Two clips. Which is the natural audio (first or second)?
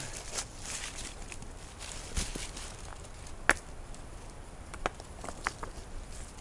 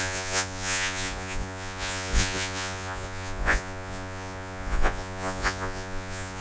first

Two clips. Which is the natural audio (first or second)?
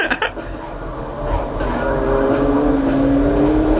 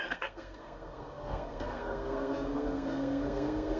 first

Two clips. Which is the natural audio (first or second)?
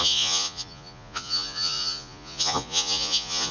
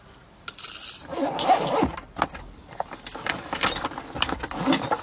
second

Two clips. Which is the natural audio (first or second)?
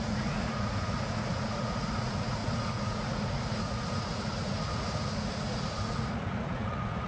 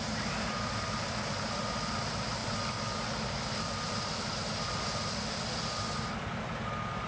second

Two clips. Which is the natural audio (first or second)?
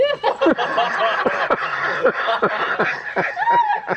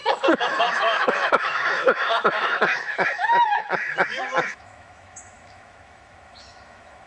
first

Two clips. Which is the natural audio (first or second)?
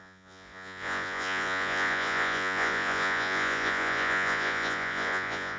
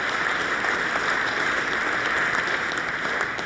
second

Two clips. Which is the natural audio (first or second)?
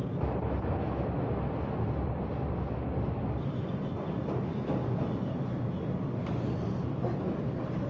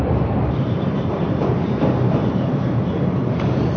first